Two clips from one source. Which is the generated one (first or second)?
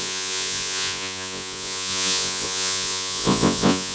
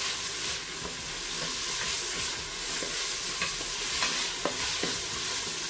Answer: first